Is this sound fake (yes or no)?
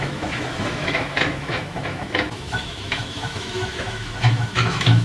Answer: yes